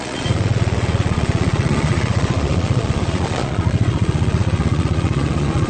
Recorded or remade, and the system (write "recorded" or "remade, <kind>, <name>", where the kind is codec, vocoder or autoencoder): remade, vocoder, Vocos